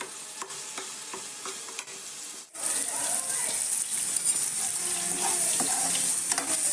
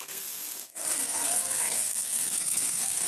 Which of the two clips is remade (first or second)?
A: second